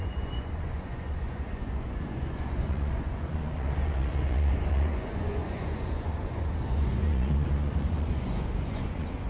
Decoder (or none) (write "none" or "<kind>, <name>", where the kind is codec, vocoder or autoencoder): vocoder, Vocos